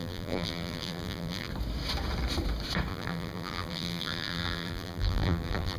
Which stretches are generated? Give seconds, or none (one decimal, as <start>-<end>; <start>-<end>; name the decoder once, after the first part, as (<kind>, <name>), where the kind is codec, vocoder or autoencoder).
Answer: 0.0-1.5 (vocoder, BigVGAN v2); 2.9-5.8